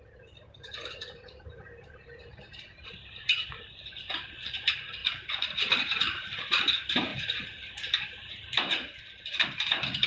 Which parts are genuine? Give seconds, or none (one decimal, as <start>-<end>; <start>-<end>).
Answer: none